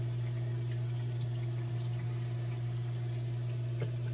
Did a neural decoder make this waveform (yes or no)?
no